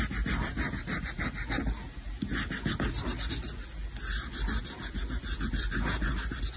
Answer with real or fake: real